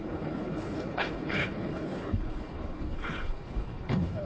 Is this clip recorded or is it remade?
remade